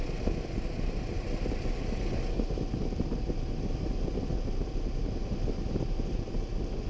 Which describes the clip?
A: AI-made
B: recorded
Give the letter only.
B